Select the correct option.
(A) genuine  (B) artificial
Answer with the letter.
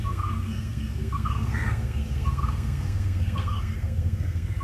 B